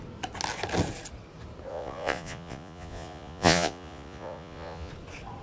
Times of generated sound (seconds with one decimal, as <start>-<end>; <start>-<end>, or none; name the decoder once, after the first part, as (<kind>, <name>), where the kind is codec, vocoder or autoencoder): 1.7-4.9 (vocoder, Vocos)